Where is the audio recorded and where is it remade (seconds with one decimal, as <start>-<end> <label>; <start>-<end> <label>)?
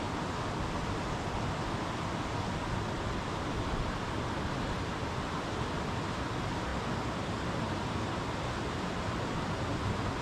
0.0-10.2 recorded